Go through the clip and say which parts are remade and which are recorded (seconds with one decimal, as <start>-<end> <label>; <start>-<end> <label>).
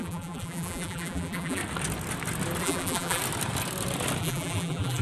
0.0-1.6 remade; 1.6-2.6 recorded; 2.6-3.2 remade; 3.2-4.2 recorded; 4.2-5.0 remade